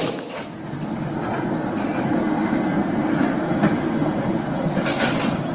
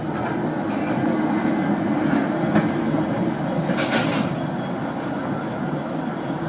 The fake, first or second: first